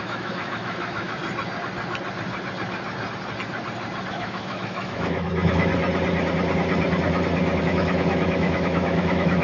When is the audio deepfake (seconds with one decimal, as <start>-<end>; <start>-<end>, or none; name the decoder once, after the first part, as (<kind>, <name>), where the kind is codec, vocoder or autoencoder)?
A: 0.0-1.2 (autoencoder, DAC-VAE); 4.1-5.7; 7.6-9.4